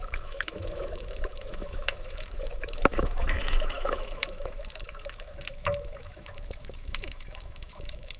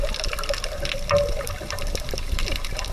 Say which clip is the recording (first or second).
second